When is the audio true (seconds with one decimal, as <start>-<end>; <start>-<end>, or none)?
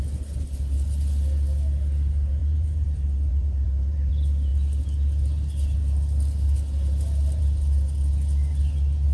0.0-2.4; 4.1-9.1